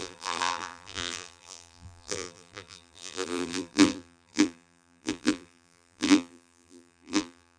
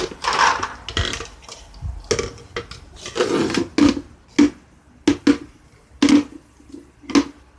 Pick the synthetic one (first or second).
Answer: first